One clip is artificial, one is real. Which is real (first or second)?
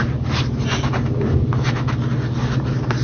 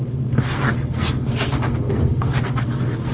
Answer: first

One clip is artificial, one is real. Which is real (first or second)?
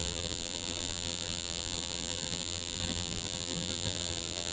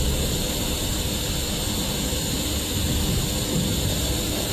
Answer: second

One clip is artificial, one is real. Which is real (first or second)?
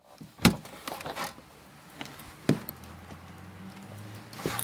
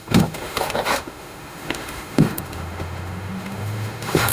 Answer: first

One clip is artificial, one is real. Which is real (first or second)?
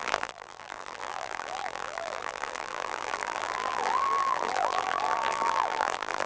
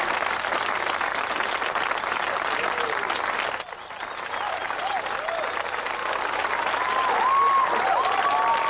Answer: second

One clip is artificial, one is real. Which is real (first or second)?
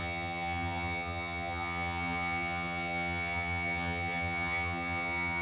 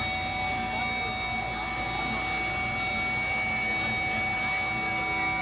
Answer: second